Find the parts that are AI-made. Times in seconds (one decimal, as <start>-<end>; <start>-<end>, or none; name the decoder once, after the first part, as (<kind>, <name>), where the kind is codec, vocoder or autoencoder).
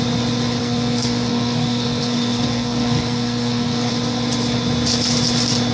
0.6-3.9 (codec, SNAC)